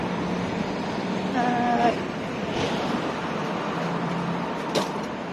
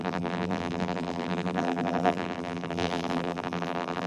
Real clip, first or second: first